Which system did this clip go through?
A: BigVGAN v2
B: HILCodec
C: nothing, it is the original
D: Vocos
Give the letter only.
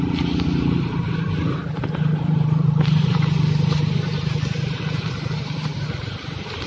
C